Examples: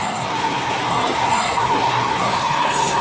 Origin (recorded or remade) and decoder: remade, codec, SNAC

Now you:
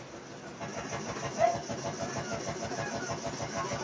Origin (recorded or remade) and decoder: recorded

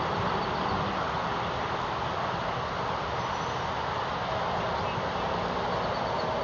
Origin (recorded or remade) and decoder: recorded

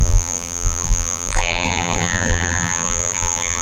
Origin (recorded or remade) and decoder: remade, vocoder, BigVGAN v2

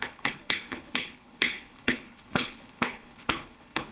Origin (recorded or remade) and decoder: remade, codec, HILCodec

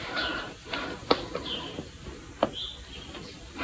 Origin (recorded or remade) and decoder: recorded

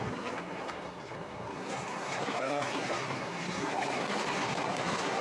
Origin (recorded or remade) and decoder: remade, codec, SNAC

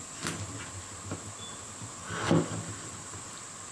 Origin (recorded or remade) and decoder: recorded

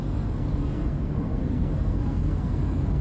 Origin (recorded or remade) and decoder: remade, codec, SNAC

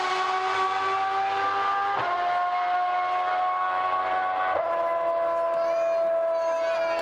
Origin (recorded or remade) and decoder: recorded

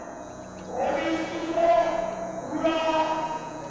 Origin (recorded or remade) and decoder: remade, vocoder, Vocos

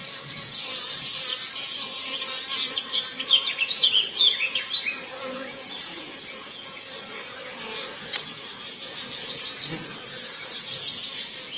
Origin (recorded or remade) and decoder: remade, vocoder, Vocos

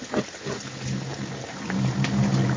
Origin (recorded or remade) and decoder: recorded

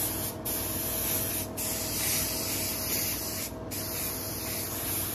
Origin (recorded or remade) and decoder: recorded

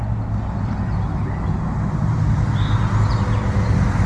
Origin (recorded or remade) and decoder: recorded